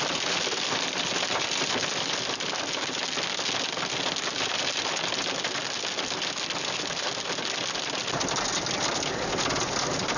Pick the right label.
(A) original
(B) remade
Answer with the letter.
A